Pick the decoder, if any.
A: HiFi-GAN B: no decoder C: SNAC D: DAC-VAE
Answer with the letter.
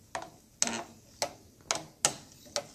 B